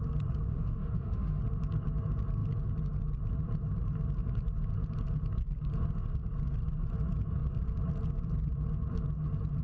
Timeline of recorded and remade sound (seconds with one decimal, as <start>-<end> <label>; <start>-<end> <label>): 0.0-0.5 recorded; 0.5-1.4 remade; 1.4-9.6 recorded